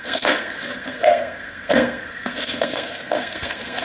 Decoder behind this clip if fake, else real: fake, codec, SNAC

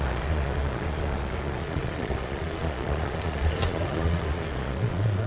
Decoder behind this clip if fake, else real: fake, vocoder, Vocos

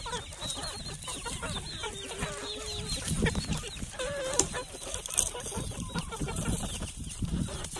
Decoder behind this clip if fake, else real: real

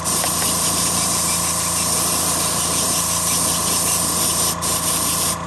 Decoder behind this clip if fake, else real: real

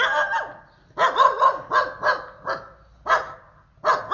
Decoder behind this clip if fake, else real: real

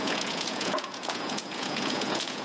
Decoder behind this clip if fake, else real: fake, vocoder, Vocos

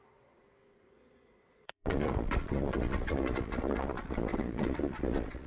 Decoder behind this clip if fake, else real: fake, vocoder, Vocos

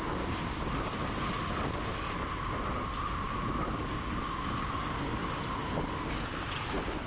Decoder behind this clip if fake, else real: real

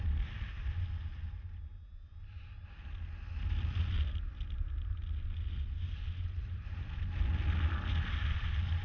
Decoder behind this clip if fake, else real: real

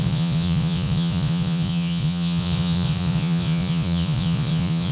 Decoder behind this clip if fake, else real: fake, vocoder, Vocos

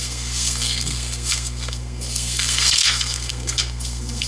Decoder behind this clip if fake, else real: fake, codec, SNAC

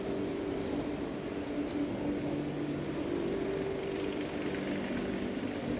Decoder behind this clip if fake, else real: real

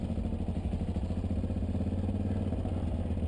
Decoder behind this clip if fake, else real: real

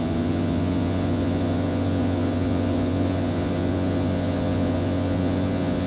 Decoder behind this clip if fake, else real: fake, vocoder, Vocos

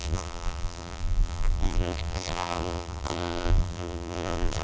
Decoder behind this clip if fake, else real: fake, vocoder, BigVGAN v2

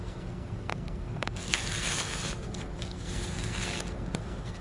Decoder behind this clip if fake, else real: fake, codec, SNAC